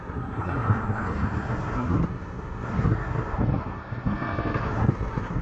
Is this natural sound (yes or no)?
no